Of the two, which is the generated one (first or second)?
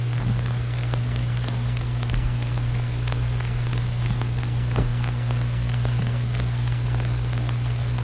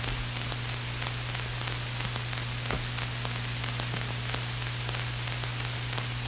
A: first